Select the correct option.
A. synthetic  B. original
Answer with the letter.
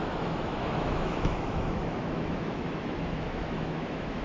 A